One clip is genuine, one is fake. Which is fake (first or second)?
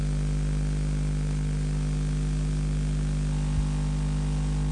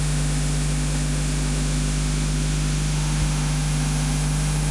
second